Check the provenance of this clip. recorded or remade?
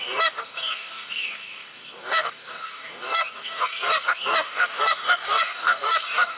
remade